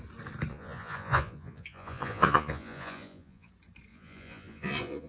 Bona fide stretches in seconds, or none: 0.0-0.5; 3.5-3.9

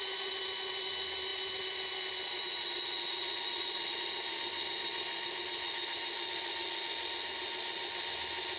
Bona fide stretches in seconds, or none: 0.0-8.6

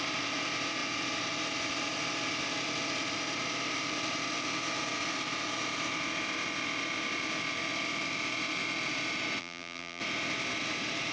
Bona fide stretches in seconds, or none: 0.0-9.4; 10.0-11.1

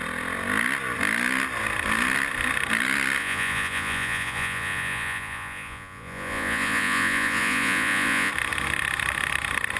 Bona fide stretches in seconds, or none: 0.0-3.2; 8.3-9.8

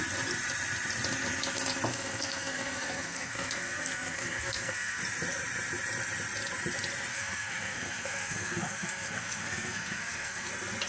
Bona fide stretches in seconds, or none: 0.0-1.9; 5.0-7.1; 10.5-10.9

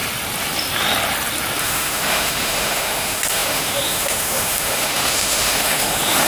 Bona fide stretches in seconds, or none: 0.0-1.6

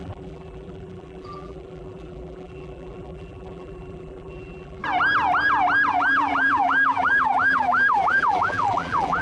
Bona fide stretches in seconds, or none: 4.8-5.9